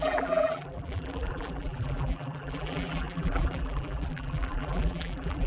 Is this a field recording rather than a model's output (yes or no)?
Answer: no